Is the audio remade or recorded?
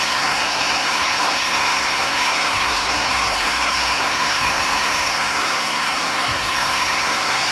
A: remade